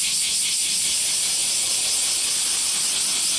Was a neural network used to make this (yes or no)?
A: no